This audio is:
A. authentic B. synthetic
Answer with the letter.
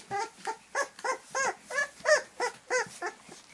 A